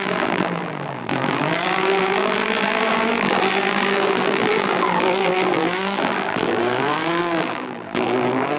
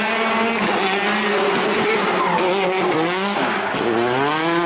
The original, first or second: second